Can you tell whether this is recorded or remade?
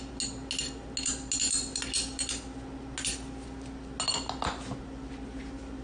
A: recorded